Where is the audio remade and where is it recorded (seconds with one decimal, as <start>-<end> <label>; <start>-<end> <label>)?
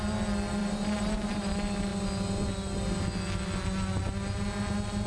0.0-0.6 recorded; 0.6-1.5 remade; 1.5-5.1 recorded